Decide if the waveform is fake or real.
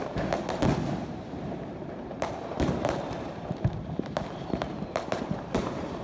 fake